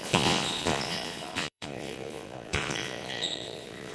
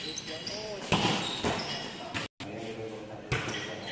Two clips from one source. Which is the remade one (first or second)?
first